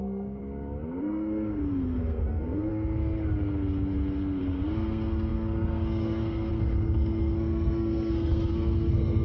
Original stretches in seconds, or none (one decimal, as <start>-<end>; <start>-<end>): 0.4-1.0; 2.7-4.4